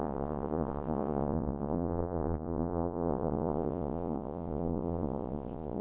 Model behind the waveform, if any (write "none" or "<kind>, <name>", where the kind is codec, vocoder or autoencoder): vocoder, Vocos